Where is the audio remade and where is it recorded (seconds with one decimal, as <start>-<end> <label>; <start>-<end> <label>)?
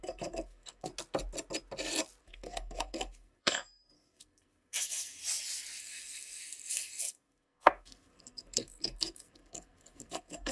0.0-0.9 remade; 0.9-2.2 recorded; 2.2-5.2 remade; 5.2-5.8 recorded; 5.8-10.5 remade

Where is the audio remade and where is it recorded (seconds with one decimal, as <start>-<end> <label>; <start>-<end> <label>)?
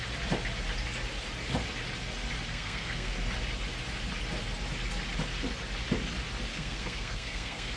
0.0-2.5 recorded; 2.5-3.1 remade; 3.1-6.5 recorded; 6.5-7.8 remade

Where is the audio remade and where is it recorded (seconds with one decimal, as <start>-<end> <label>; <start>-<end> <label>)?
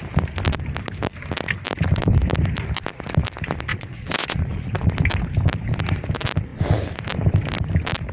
0.0-3.7 recorded; 3.7-4.9 remade; 4.9-8.1 recorded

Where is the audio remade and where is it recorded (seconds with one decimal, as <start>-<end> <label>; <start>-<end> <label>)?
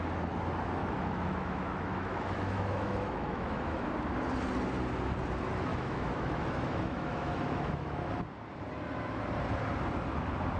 0.0-0.8 recorded; 0.8-3.9 remade; 3.9-5.7 recorded; 5.7-8.1 remade; 8.1-10.6 recorded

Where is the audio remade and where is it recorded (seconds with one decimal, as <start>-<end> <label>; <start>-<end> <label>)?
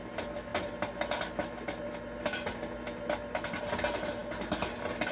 0.0-5.1 recorded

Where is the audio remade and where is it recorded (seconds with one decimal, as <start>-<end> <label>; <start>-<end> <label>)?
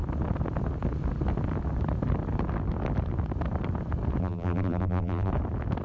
0.0-4.2 recorded; 4.2-5.3 remade; 5.3-5.8 recorded